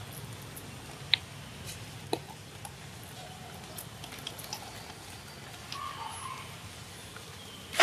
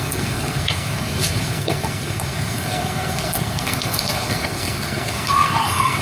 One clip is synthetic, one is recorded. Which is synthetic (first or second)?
second